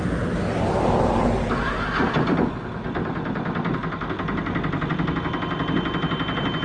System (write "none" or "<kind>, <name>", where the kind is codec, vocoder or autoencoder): none